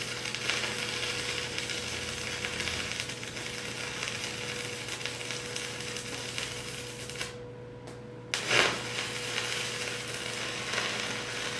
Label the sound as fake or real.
real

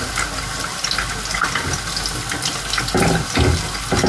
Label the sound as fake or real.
real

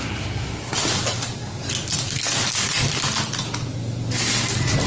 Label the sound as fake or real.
real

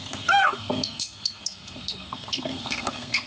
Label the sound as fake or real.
fake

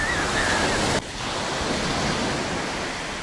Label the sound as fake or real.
real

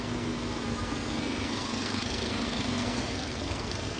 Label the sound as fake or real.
fake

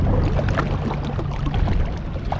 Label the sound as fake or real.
real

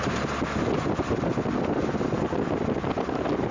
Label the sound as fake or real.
real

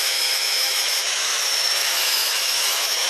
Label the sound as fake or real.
fake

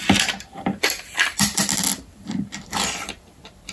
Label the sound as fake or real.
fake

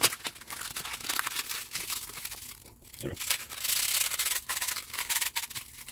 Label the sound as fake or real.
real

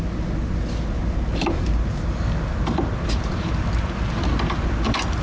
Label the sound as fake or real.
real